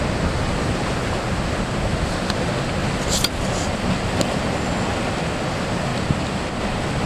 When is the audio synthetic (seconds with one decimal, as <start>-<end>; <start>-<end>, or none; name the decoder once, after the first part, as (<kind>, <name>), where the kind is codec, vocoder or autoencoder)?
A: none